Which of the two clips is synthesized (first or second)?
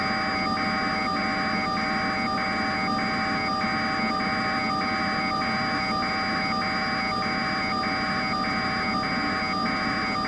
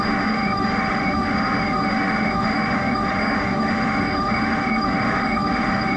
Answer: second